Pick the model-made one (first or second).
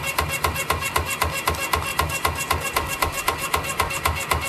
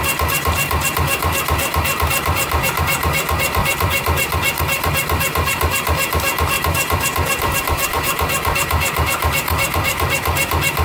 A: second